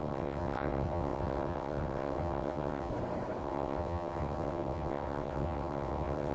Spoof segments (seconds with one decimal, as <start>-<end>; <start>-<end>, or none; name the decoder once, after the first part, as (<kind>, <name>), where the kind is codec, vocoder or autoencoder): 0.0-2.9 (vocoder, WaveNeXt); 3.4-6.3